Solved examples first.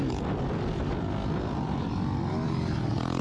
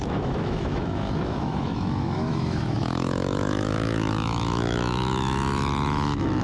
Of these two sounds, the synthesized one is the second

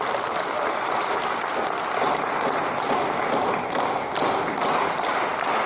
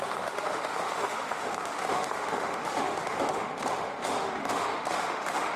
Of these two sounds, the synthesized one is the second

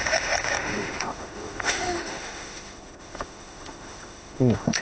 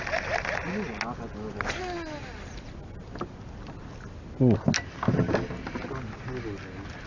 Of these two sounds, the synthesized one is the first